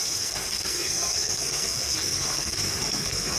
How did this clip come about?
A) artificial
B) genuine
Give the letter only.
A